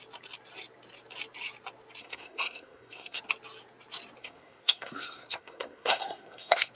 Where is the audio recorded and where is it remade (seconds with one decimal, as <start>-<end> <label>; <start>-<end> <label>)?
0.0-2.0 recorded; 2.0-3.2 remade; 3.2-4.2 recorded; 4.2-6.7 remade